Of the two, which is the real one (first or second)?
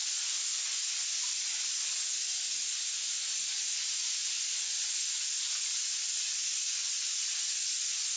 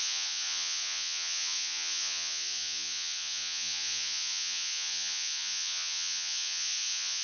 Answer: first